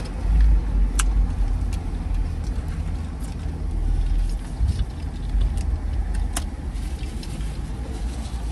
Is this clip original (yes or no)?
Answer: yes